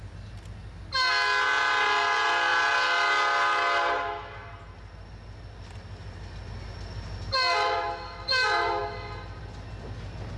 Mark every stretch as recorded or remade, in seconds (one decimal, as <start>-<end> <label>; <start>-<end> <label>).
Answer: 0.0-10.4 recorded